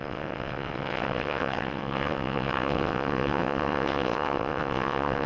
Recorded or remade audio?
remade